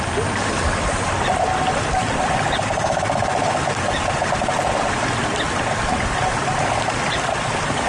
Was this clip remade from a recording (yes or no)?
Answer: no